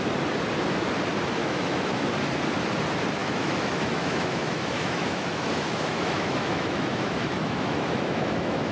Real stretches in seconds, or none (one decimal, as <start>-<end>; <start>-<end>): 0.0-1.4; 2.1-3.2

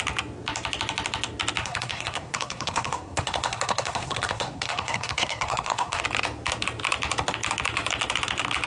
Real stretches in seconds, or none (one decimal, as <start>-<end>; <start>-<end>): 0.0-1.6; 6.0-8.7

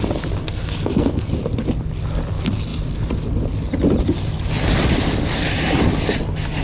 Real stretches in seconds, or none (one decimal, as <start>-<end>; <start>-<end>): 0.0-0.4; 1.3-6.6

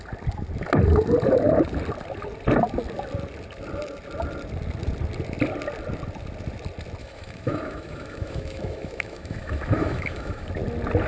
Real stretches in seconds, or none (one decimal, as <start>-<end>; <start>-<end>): 0.0-7.0; 10.5-11.1

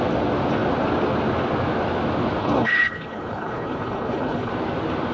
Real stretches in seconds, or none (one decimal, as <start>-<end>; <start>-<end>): 0.0-2.4; 4.5-5.1